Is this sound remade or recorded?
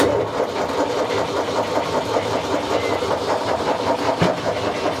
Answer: remade